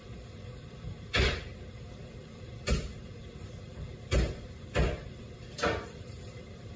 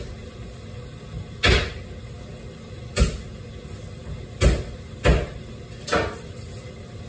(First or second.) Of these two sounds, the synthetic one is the first